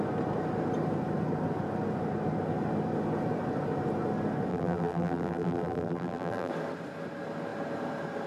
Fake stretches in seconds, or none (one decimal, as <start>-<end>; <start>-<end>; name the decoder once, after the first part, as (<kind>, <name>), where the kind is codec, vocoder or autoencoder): 4.5-6.5 (vocoder, BigVGAN v2)